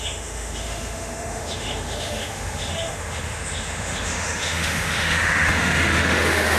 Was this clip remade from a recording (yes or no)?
yes